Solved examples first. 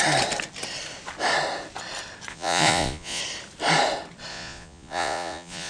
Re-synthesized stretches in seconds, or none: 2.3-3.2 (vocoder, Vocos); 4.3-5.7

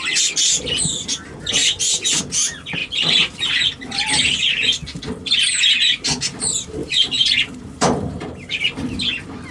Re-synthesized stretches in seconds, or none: 2.8-3.6 (vocoder, BigVGAN v2); 6.8-8.6

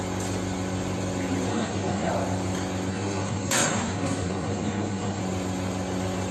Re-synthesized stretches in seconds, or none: 1.5-2.1 (codec, SNAC); 2.9-5.2

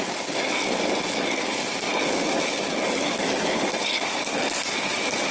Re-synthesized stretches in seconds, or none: none